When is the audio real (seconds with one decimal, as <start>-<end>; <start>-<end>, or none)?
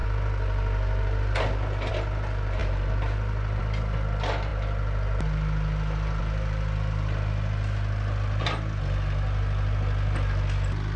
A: 0.0-11.0